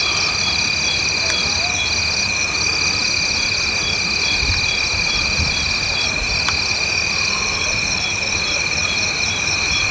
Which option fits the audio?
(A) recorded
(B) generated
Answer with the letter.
A